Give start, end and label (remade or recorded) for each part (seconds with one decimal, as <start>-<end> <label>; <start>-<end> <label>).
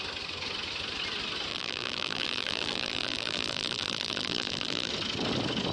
0.0-1.5 recorded; 1.5-4.9 remade; 4.9-5.7 recorded